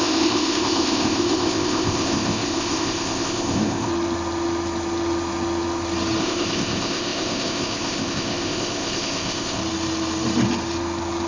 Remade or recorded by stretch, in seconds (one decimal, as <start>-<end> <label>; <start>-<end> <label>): 0.0-3.9 remade; 3.9-6.2 recorded; 6.2-9.6 remade; 9.6-11.3 recorded